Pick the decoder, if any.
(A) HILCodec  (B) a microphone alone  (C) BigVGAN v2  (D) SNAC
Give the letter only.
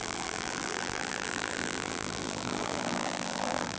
C